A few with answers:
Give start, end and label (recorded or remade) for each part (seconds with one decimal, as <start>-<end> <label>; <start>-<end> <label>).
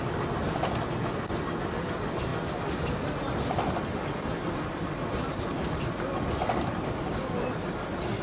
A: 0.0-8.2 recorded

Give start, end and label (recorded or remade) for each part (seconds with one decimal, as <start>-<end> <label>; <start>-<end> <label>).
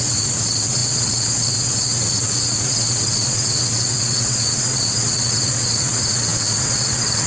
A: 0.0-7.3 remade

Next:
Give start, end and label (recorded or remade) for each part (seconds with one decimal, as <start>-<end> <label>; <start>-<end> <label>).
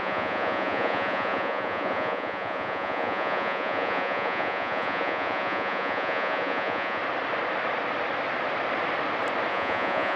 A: 0.0-7.0 remade; 7.0-9.5 recorded; 9.5-10.2 remade